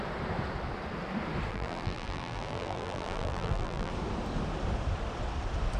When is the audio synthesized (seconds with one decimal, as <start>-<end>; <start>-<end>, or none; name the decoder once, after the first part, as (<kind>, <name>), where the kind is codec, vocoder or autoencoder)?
1.5-3.9 (vocoder, BigVGAN v2)